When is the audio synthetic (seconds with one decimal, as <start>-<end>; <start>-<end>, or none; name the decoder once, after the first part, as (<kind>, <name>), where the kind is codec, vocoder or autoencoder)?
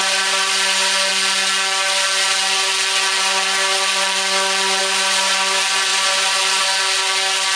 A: none